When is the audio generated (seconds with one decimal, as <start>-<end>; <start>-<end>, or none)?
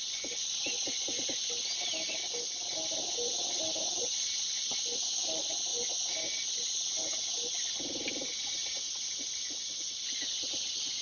none